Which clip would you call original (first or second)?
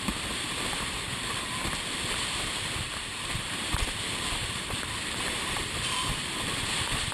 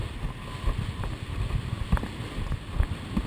second